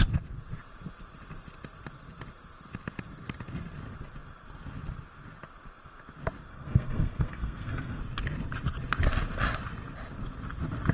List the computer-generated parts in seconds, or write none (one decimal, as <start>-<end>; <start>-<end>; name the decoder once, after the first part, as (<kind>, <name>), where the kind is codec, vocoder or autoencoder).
6.5-8.0 (codec, SNAC)